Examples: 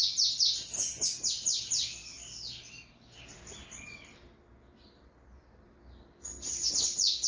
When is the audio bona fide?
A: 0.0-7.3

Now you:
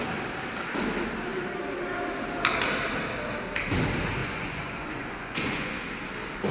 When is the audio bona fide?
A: 0.0-4.2; 5.8-6.5

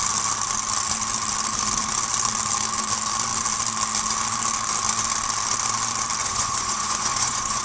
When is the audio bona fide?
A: 0.0-6.2

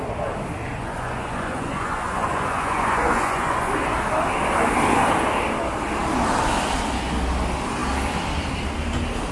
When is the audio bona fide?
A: 0.0-0.7; 3.7-9.3

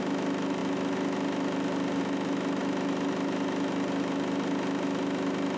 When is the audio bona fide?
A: 0.0-5.6

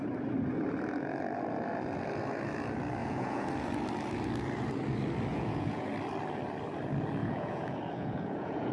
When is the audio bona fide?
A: 0.0-3.0; 3.5-5.3; 5.9-7.2

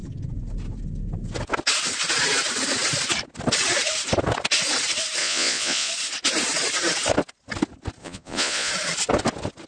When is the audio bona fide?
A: 0.0-5.2; 5.9-8.0; 8.7-9.7

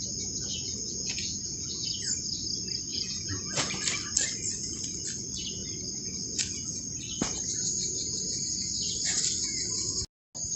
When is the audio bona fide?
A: 0.0-0.7; 2.0-2.9; 3.7-10.6